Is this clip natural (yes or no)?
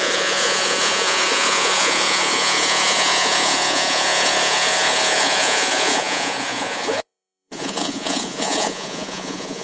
no